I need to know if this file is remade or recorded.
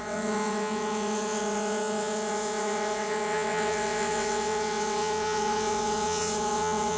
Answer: remade